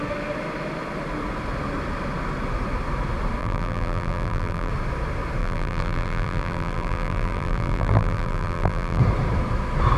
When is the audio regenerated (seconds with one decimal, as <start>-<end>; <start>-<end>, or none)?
3.4-4.7; 5.4-9.0